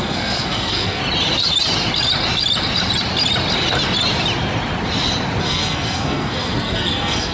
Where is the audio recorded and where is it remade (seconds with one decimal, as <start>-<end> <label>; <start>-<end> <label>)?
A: 0.0-1.0 remade; 1.0-5.4 recorded; 5.4-7.3 remade